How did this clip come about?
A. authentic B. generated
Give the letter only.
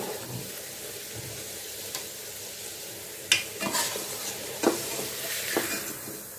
A